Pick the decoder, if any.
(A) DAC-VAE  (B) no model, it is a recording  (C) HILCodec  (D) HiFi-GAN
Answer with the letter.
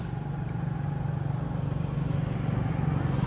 B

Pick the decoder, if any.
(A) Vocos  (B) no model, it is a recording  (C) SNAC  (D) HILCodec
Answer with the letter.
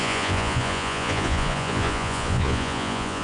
A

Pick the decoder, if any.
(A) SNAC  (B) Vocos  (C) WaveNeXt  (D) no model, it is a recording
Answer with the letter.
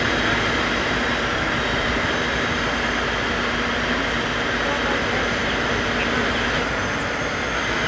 D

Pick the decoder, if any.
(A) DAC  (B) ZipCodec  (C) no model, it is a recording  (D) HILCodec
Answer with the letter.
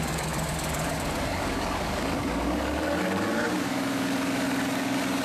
A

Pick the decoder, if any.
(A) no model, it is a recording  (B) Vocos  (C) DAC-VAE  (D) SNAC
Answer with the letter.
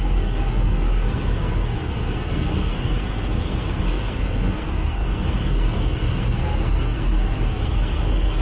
D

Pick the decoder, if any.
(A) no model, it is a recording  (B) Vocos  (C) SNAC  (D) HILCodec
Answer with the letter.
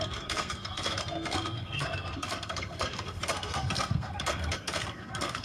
C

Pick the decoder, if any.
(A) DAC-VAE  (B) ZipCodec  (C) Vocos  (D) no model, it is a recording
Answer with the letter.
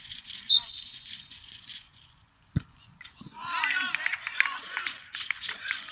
C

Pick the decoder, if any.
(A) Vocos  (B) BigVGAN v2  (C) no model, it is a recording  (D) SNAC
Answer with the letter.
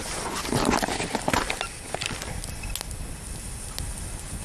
C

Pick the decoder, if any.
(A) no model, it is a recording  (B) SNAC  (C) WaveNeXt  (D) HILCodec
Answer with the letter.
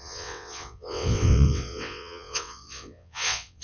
C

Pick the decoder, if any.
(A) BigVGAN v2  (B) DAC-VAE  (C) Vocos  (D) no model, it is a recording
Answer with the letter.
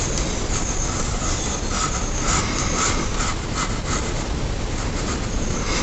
D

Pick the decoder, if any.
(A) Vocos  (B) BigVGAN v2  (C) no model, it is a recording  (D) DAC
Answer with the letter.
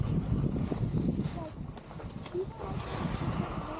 C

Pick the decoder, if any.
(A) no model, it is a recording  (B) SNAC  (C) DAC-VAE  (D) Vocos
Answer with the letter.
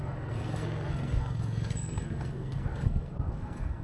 B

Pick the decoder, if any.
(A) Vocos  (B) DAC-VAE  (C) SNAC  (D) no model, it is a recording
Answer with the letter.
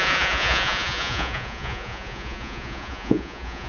A